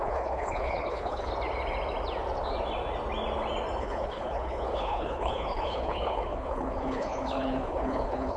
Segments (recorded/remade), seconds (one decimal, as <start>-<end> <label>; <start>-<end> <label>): 0.0-1.3 remade; 1.3-3.8 recorded; 3.8-8.4 remade